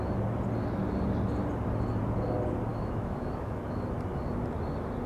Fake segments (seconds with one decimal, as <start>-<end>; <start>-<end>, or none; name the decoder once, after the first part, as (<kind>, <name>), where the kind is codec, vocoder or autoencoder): 2.7-3.6 (autoencoder, DAC-VAE)